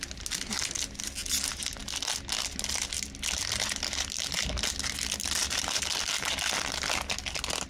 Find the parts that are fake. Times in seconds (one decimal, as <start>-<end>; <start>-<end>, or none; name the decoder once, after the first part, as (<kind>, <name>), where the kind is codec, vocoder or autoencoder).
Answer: 5.2-6.6 (vocoder, BigVGAN v2)